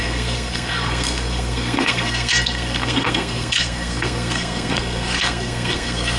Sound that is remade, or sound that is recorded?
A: remade